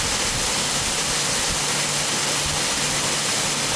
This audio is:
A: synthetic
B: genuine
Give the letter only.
B